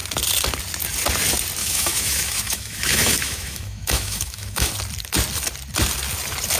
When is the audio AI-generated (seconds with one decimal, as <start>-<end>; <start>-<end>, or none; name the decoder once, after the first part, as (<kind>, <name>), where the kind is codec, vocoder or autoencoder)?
1.6-4.7 (autoencoder, DAC-VAE)